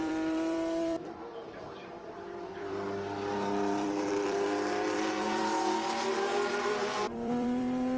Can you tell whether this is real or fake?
fake